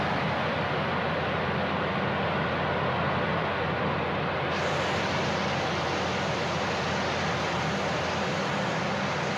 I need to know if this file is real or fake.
real